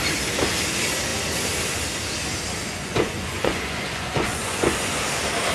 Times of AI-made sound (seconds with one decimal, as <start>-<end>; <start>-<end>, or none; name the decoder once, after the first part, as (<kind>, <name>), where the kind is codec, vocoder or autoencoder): 2.6-5.0 (vocoder, Vocos)